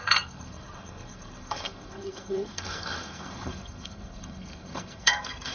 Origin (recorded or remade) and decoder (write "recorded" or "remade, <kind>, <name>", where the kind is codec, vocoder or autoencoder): remade, codec, SNAC